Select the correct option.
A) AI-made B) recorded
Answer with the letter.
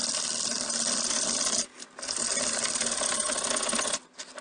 B